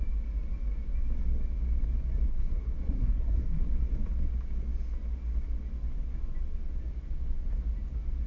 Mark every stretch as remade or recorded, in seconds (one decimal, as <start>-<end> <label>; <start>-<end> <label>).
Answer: 0.0-2.3 recorded; 2.3-3.7 remade; 3.7-8.3 recorded